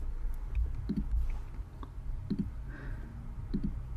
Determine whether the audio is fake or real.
real